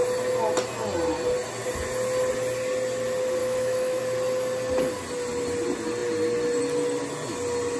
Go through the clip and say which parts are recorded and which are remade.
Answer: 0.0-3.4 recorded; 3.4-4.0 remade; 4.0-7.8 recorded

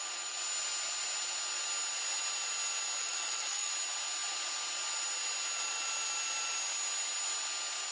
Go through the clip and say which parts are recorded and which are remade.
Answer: 0.0-3.0 recorded; 3.0-3.7 remade; 3.7-7.9 recorded

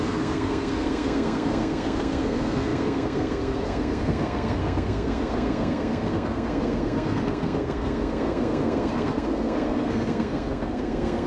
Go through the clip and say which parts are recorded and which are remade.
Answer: 0.0-11.3 remade

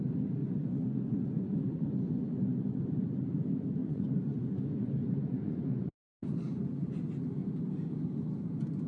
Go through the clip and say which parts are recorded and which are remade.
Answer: 0.0-0.4 recorded; 0.4-2.1 remade; 2.1-3.8 recorded; 3.8-6.2 remade; 6.2-8.9 recorded